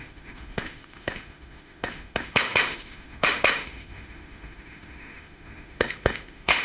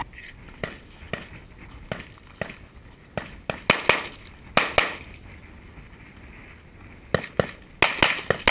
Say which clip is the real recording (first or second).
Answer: second